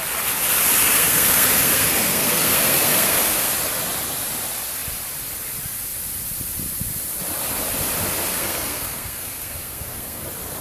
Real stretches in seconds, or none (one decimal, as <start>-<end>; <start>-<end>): 0.0-0.8; 3.5-8.3; 10.2-10.6